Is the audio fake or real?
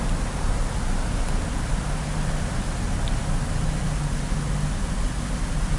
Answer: real